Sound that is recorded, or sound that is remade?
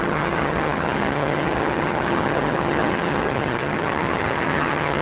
remade